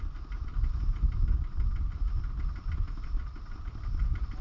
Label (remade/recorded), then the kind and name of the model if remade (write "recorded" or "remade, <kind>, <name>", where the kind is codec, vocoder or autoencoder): recorded